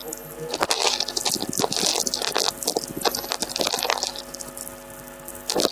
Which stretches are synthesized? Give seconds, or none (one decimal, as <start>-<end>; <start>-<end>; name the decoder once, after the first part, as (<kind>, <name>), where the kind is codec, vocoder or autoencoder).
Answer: none